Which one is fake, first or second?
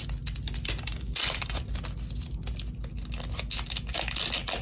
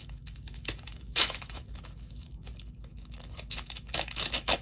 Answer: second